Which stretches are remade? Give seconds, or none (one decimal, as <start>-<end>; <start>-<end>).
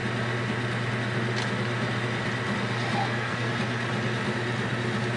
3.0-3.5